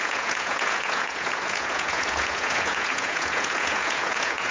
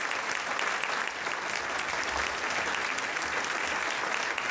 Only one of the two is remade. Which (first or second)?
first